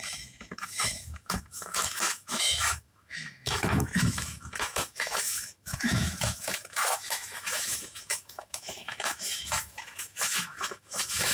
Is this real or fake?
fake